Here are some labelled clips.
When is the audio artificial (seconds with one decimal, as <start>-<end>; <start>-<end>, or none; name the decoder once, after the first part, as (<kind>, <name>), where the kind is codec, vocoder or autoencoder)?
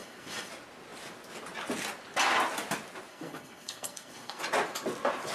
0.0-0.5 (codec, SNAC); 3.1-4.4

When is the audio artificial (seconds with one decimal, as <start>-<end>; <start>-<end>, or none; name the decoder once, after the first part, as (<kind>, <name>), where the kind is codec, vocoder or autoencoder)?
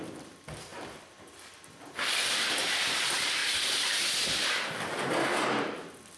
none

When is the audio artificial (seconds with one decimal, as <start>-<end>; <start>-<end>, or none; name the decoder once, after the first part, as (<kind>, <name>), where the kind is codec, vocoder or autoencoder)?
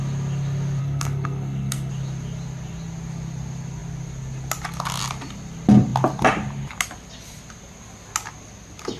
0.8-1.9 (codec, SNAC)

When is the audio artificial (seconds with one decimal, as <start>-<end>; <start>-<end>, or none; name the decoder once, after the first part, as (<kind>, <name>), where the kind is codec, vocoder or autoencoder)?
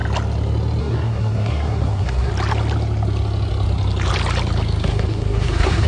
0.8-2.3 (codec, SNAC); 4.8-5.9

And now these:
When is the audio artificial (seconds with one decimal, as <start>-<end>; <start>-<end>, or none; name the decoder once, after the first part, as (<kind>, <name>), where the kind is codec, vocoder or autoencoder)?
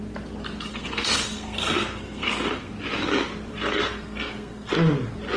0.7-2.7 (codec, SNAC); 3.5-4.7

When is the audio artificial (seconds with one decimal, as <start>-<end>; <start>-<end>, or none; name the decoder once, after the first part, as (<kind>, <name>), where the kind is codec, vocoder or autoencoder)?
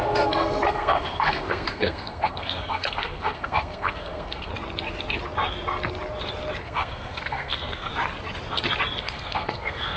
0.0-4.5 (codec, SNAC); 6.6-7.9; 9.0-10.0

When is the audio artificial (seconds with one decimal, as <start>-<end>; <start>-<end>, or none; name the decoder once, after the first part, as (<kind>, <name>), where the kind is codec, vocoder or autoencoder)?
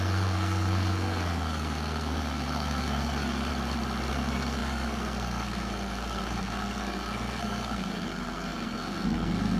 0.0-3.5 (codec, SNAC); 4.1-9.6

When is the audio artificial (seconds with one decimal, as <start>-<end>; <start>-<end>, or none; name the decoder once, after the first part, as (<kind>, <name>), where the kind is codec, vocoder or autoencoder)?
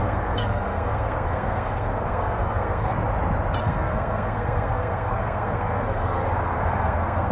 0.0-2.9 (codec, SNAC); 3.6-7.3